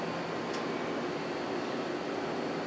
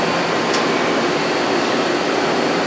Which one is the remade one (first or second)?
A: second